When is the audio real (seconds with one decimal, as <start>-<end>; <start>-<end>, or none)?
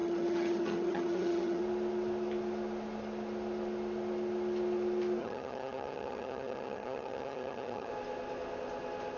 1.6-5.2; 7.9-9.2